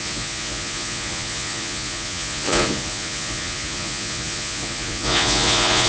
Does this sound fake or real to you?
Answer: fake